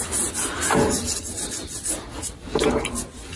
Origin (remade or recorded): recorded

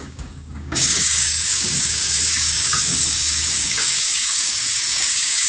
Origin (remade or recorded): remade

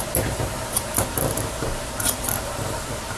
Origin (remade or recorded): recorded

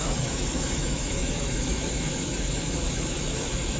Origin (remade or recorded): remade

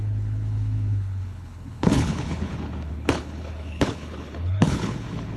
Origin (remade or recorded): remade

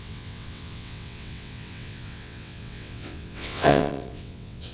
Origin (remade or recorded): remade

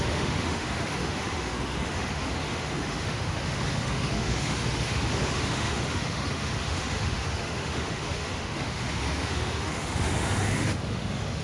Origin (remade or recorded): remade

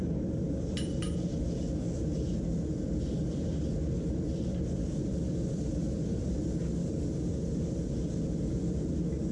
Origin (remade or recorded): remade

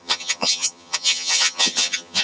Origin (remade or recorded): remade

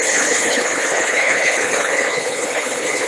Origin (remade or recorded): remade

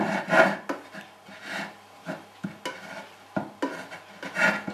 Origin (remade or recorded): recorded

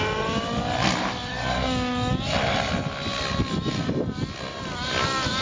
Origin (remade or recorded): recorded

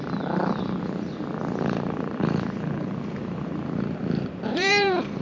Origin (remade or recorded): remade